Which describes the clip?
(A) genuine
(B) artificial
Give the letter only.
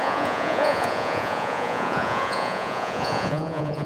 B